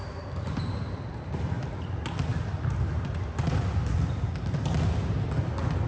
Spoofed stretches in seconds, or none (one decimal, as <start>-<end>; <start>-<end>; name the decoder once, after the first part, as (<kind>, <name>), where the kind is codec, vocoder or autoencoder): none